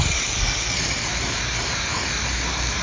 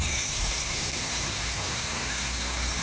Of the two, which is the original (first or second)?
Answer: first